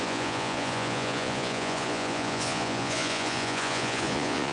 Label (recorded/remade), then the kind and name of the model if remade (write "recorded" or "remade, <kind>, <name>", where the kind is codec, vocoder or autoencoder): remade, vocoder, Vocos